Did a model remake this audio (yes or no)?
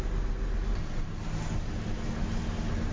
no